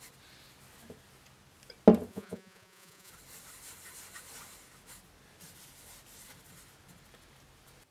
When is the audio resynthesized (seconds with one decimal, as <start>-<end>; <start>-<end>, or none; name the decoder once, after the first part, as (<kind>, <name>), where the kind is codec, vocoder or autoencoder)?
2.1-3.1 (vocoder, Vocos)